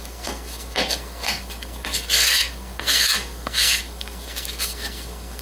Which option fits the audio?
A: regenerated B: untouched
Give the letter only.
A